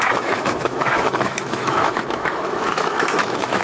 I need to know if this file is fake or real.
fake